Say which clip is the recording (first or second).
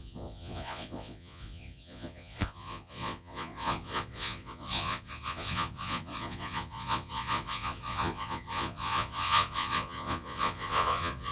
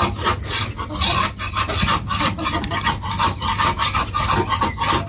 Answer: second